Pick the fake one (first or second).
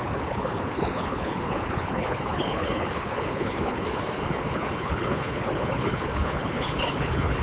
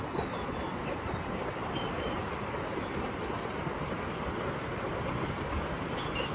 first